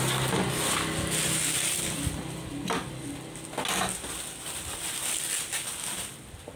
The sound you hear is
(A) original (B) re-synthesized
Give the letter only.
A